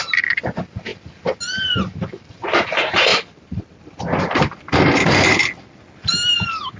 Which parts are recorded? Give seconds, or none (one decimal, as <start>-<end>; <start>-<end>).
0.0-3.1; 5.7-6.8